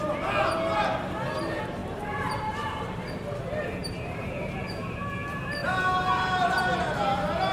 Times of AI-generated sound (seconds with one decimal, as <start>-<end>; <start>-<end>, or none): 1.8-2.5; 3.8-5.0; 5.6-6.6